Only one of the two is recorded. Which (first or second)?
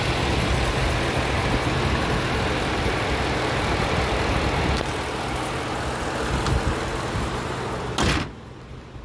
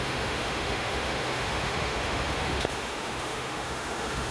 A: first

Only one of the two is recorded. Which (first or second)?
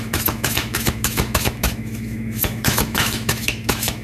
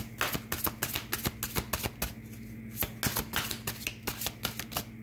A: second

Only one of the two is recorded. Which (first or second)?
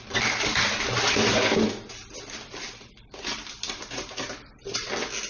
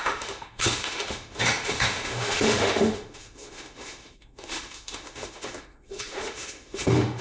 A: first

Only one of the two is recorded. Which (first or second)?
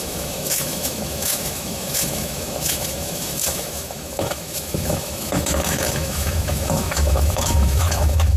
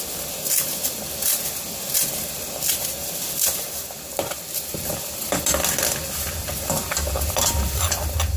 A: second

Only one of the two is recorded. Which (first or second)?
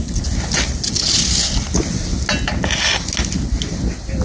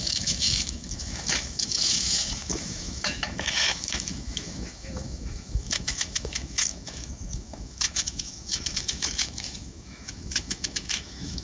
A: first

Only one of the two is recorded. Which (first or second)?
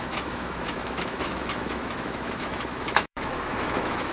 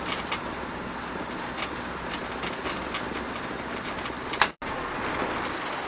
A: second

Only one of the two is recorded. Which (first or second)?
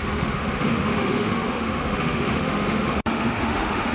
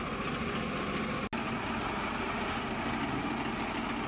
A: second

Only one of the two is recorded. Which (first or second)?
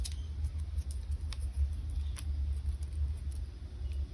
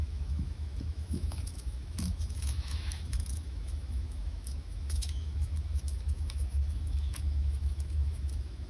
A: first